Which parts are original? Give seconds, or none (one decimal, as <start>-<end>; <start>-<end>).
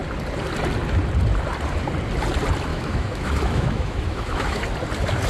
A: 0.0-2.7; 4.6-5.3